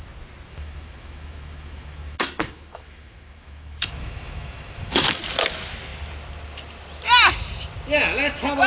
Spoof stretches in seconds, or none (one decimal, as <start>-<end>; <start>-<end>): 0.5-5.2